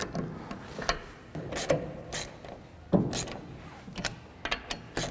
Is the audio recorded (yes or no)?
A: yes